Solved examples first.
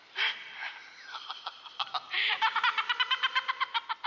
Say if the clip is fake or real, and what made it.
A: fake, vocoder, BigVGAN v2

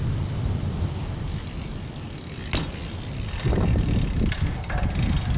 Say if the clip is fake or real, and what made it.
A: real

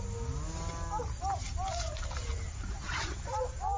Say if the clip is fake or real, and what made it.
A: real